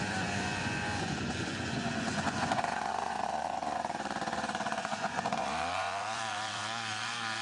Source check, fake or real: fake